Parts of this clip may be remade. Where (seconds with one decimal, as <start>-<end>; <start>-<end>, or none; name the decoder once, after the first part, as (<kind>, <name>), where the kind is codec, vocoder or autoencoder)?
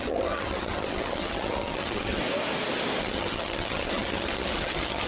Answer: 0.0-2.2 (vocoder, HiFi-GAN); 3.0-5.1